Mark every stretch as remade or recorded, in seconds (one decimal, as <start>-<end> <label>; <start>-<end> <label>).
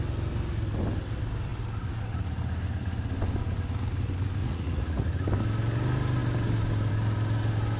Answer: 0.0-4.4 recorded; 4.4-5.1 remade; 5.1-7.8 recorded